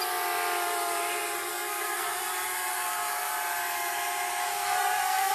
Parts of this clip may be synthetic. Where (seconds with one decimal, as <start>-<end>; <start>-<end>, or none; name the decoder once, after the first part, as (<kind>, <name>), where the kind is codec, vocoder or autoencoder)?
1.5-2.2 (codec, SNAC); 2.7-3.3; 4.4-5.3